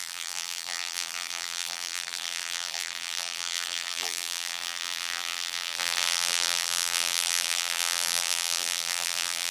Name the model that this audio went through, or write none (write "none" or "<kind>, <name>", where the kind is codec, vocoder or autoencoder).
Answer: vocoder, BigVGAN v2